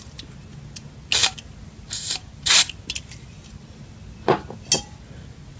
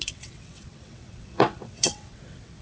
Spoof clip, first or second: second